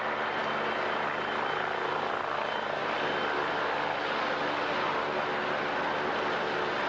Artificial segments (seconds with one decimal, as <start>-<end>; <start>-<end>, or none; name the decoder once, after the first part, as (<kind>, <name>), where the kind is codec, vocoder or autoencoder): none